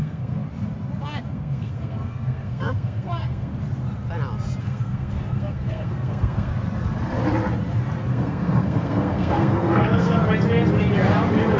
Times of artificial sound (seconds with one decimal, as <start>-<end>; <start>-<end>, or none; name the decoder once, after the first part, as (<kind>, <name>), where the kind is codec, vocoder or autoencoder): 0.0-0.4 (codec, SNAC); 1.0-3.5; 4.6-6.5; 8.1-10.2